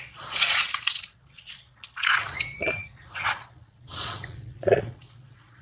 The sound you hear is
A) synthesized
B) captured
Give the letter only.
A